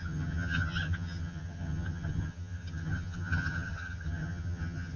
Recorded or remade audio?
remade